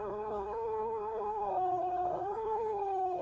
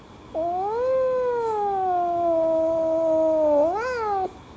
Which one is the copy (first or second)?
first